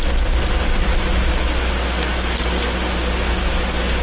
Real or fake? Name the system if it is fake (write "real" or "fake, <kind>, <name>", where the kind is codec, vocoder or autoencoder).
real